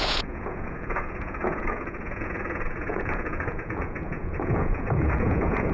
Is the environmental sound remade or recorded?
remade